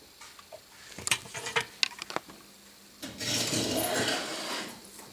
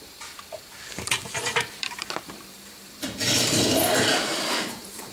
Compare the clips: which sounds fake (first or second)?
second